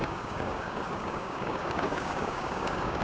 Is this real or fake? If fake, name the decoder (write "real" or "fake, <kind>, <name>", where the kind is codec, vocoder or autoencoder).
fake, codec, DAC